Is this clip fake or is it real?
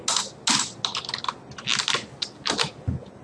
real